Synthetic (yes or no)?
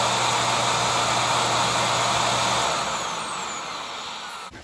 no